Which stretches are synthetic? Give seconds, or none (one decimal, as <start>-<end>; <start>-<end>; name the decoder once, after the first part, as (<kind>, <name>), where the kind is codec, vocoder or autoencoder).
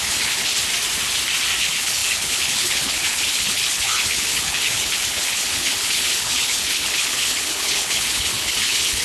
0.0-0.5 (codec, HILCodec); 1.6-9.0